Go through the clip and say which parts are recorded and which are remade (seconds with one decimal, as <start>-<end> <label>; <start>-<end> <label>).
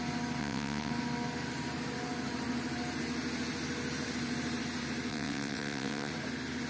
0.0-0.4 recorded; 0.4-0.9 remade; 0.9-5.1 recorded; 5.1-6.1 remade; 6.1-6.7 recorded